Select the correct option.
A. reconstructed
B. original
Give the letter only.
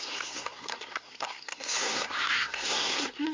A